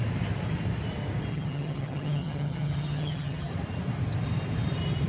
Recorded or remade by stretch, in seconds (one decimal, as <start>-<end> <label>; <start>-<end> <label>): 0.0-1.3 recorded; 1.3-3.5 remade; 3.5-5.1 recorded